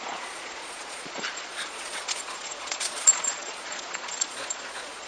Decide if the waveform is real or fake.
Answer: fake